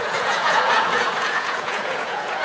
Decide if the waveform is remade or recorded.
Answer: remade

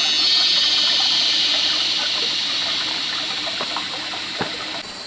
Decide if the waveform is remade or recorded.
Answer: recorded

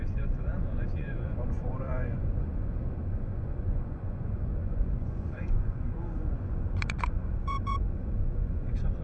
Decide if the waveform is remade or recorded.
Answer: remade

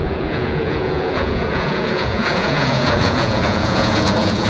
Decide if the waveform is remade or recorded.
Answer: remade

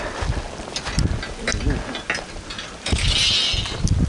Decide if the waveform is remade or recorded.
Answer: recorded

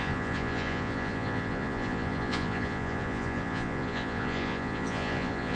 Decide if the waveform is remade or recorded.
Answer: remade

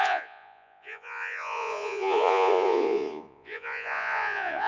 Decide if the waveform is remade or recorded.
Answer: remade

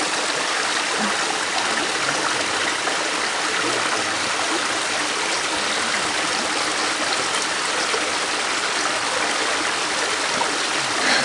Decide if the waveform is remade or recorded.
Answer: recorded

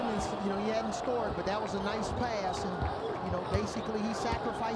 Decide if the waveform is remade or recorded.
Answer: recorded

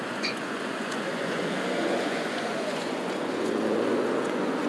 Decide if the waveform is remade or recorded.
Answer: remade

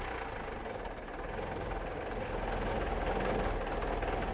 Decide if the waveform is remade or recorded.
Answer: recorded